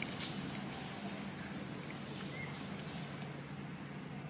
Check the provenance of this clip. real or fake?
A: real